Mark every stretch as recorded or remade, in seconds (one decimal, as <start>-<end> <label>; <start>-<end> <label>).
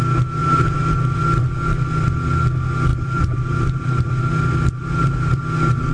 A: 0.0-0.4 recorded; 0.4-0.9 remade; 0.9-2.9 recorded; 2.9-4.1 remade; 4.1-4.8 recorded; 4.8-5.4 remade; 5.4-5.9 recorded